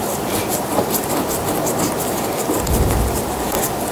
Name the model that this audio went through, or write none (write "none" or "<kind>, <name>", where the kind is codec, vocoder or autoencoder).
none